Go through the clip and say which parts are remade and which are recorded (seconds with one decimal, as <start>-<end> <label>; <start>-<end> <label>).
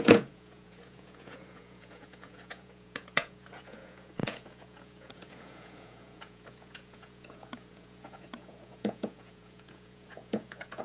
0.0-10.8 remade